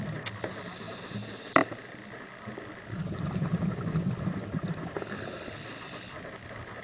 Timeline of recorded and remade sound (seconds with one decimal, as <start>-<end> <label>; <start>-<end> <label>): 0.0-6.8 recorded

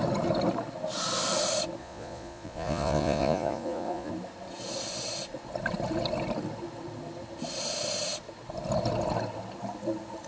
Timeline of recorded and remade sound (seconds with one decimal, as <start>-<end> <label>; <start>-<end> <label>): 0.0-1.8 recorded; 1.8-4.1 remade; 4.1-10.3 recorded

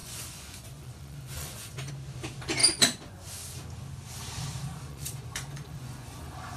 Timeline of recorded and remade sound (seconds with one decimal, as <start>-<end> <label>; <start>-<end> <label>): 0.0-1.9 remade; 1.9-2.6 recorded; 2.6-3.3 remade; 3.3-4.9 recorded; 4.9-6.6 remade